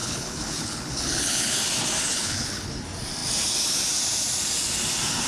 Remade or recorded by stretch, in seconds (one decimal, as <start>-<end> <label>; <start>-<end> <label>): 0.0-1.6 remade; 1.6-2.1 recorded; 2.1-2.7 remade; 2.7-5.3 recorded